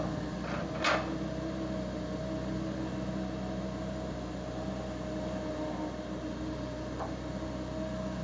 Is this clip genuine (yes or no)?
yes